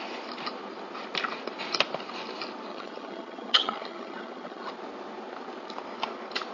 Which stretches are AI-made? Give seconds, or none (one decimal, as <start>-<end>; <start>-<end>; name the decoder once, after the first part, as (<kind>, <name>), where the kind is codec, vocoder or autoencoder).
2.7-4.7 (vocoder, HiFi-GAN)